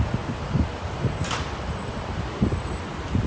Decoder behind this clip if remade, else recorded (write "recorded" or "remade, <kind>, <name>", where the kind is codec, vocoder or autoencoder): recorded